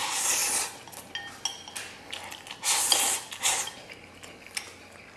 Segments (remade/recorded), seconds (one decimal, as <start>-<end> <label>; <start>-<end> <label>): 0.0-5.2 recorded